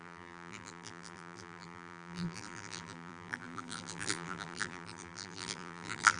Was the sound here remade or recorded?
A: remade